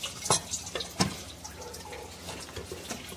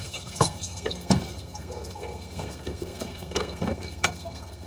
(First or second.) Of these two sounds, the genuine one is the first